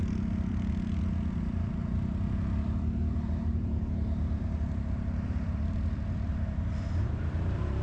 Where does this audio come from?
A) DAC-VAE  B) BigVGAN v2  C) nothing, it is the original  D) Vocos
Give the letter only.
B